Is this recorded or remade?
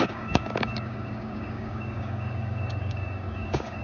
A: remade